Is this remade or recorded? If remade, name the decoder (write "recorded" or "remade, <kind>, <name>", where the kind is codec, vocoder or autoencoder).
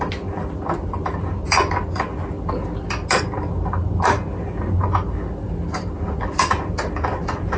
recorded